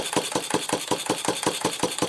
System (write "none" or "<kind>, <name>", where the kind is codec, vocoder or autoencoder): none